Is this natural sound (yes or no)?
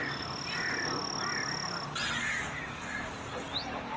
yes